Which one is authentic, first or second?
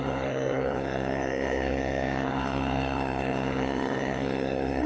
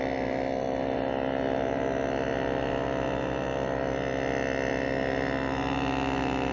second